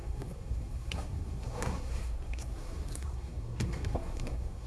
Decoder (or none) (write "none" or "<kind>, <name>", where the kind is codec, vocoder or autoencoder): codec, SNAC